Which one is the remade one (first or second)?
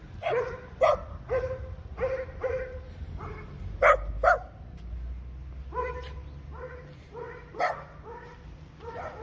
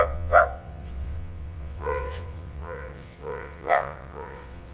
second